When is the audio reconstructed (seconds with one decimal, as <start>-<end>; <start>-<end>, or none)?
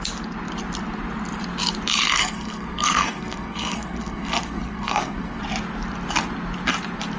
2.2-5.4